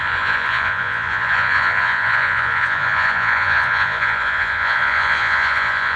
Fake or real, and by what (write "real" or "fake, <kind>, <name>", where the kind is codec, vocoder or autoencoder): fake, vocoder, Vocos